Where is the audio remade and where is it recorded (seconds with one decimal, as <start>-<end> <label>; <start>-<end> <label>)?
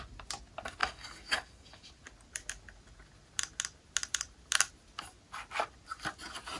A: 0.0-0.8 recorded; 0.8-1.9 remade; 1.9-6.6 recorded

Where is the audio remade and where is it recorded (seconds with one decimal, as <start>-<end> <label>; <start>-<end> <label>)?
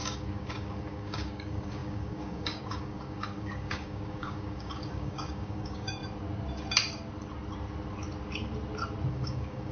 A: 0.0-6.0 remade; 6.0-9.1 recorded; 9.1-9.7 remade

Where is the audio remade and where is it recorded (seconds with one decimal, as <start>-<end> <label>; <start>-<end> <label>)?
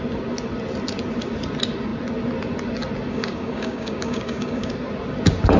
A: 0.0-3.1 recorded; 3.1-4.7 remade; 4.7-5.6 recorded